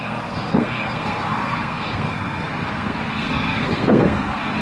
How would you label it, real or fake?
fake